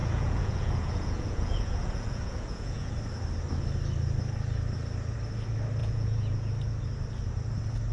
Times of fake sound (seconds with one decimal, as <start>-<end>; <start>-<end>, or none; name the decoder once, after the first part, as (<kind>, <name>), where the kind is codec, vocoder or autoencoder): 0.0-2.9 (vocoder, Vocos); 5.8-6.5